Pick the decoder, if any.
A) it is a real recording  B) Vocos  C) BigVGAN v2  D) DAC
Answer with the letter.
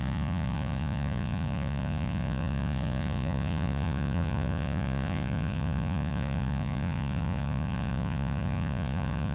B